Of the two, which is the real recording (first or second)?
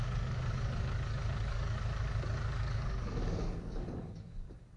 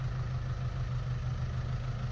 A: second